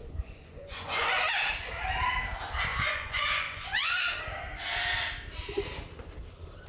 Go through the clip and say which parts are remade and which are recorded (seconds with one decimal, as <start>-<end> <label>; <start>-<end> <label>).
0.0-1.2 remade; 1.2-2.7 recorded; 2.7-4.1 remade; 4.1-6.7 recorded